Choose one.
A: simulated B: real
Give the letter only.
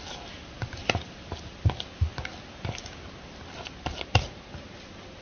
B